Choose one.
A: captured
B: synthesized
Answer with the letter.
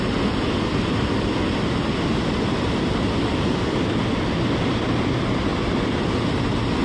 A